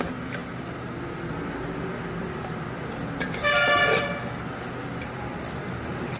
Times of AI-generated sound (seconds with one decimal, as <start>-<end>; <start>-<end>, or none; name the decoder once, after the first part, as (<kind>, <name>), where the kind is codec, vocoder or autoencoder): none